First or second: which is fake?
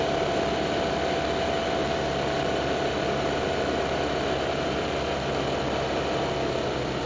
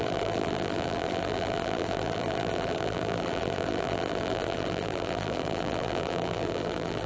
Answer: second